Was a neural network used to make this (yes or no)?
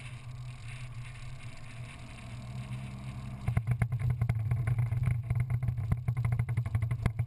no